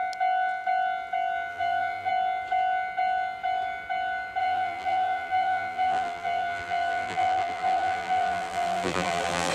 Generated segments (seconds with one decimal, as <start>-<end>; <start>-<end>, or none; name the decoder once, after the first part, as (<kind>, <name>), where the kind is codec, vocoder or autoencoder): 1.5-2.1 (vocoder, BigVGAN v2); 4.4-9.5